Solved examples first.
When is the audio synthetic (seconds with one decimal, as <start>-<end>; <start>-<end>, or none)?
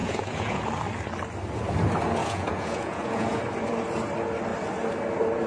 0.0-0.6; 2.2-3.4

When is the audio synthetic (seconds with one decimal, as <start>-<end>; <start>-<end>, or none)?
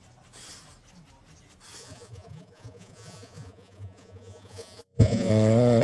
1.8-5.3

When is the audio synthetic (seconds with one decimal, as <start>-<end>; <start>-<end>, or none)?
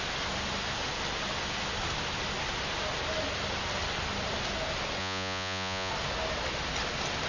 5.0-5.9